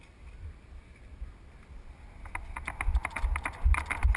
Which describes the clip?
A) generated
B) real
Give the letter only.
B